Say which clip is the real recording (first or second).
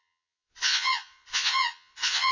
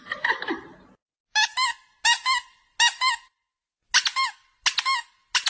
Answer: second